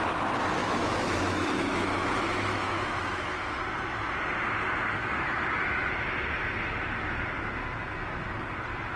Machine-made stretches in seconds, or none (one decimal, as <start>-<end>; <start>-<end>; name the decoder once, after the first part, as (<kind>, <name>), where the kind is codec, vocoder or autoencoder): 0.6-3.6 (autoencoder, DAC-VAE); 5.0-5.9